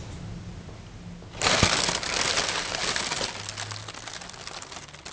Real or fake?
real